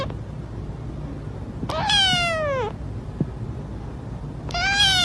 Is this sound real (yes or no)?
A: yes